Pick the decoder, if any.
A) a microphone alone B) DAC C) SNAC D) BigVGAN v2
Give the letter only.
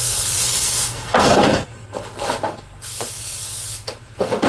C